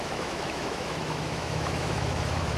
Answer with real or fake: fake